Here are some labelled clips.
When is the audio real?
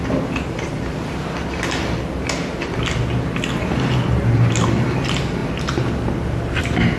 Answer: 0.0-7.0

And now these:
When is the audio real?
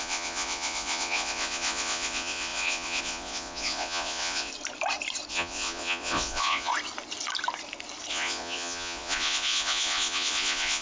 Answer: 4.5-5.3; 6.7-8.1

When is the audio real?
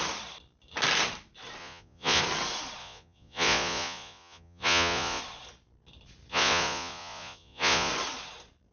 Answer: 0.0-1.6; 2.2-2.8; 5.2-6.3; 7.9-8.7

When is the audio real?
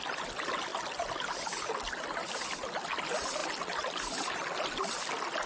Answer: 0.0-5.5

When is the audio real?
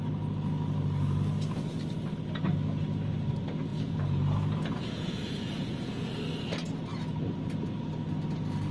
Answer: 0.0-3.7; 6.1-8.7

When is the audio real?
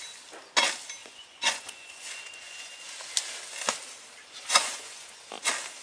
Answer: 0.0-1.0; 2.8-4.2; 5.2-5.8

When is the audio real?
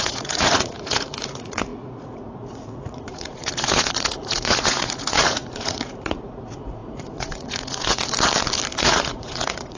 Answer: 8.0-8.8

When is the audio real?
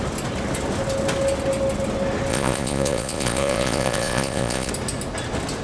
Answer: 0.0-2.3; 4.7-5.6